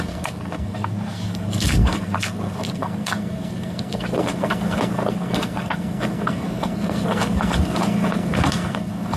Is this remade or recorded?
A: remade